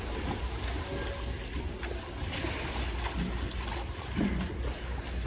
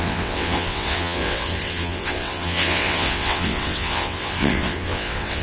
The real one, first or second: first